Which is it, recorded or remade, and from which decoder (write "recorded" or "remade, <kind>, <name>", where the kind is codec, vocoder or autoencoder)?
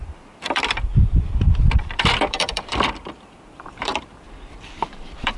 remade, vocoder, BigVGAN v2